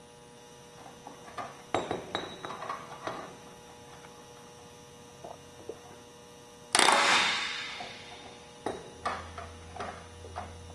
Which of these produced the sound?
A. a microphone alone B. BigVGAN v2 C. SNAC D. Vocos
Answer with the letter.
A